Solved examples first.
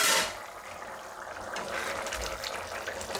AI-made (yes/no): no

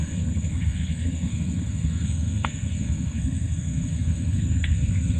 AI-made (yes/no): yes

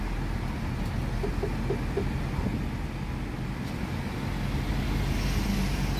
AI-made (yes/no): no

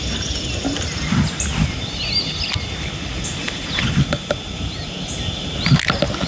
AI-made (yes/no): no